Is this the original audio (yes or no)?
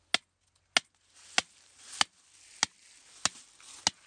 yes